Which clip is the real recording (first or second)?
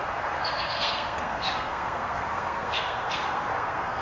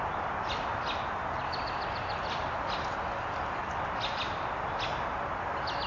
second